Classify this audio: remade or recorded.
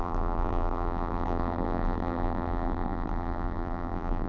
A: remade